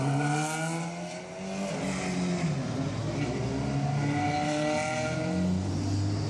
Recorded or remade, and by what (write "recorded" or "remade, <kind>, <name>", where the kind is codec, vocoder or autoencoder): recorded